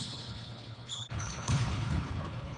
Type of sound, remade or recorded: remade